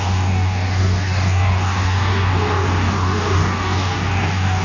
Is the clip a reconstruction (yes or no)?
yes